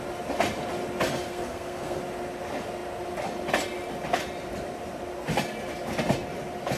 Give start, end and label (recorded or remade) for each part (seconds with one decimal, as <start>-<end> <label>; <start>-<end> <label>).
0.0-1.3 recorded; 1.3-2.0 remade; 2.0-6.8 recorded